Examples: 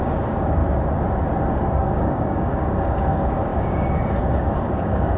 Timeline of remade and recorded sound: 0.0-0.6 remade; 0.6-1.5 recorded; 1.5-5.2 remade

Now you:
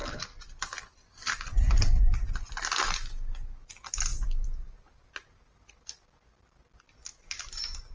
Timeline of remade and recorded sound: 0.0-3.1 remade; 3.1-4.1 recorded; 4.1-6.8 remade; 6.8-7.9 recorded

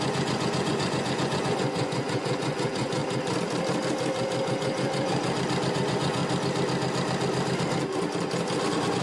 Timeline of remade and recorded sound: 0.0-3.0 remade; 3.0-4.5 recorded; 4.5-5.1 remade; 5.1-5.7 recorded; 5.7-6.2 remade; 6.2-9.0 recorded

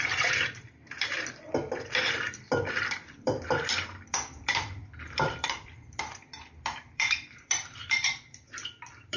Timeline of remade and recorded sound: 0.0-9.2 remade